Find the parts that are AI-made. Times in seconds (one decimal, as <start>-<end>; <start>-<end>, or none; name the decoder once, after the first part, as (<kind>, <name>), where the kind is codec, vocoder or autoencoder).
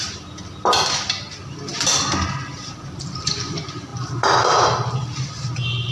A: 1.7-3.3 (vocoder, BigVGAN v2)